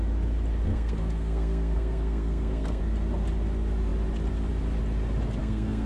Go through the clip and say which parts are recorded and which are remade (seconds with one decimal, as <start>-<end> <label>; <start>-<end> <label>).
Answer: 0.0-0.7 recorded; 0.7-2.8 remade; 2.8-5.4 recorded; 5.4-5.9 remade